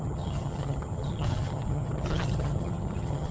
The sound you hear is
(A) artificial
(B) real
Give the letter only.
A